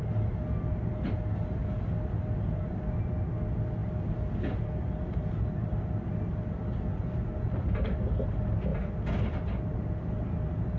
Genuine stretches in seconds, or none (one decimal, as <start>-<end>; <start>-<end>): 0.0-10.8